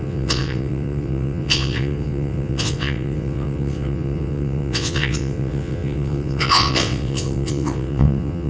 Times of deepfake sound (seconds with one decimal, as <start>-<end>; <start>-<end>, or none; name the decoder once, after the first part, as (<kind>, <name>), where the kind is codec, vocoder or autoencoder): 0.0-8.5 (vocoder, WaveNeXt)